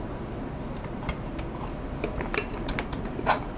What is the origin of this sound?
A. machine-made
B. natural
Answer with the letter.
B